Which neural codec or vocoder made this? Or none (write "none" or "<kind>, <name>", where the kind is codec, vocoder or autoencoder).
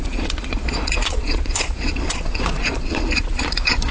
vocoder, Vocos